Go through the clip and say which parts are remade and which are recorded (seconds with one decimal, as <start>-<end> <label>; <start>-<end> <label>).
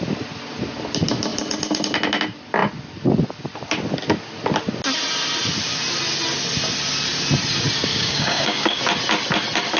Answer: 0.0-7.9 recorded; 7.9-8.8 remade; 8.8-9.8 recorded